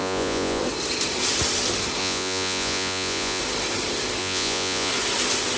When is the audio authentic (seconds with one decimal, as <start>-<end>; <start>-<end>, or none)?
0.6-2.0; 3.4-4.2; 4.9-5.6